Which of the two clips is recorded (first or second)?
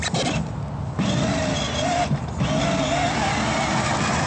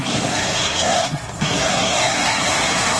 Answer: first